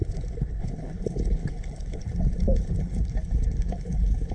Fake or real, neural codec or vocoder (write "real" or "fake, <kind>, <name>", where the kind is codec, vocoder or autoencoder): fake, codec, HILCodec